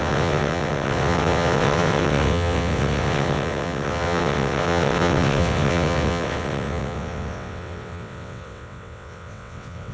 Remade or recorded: remade